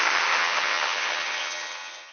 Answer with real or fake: fake